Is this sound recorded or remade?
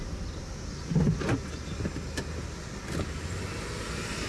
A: recorded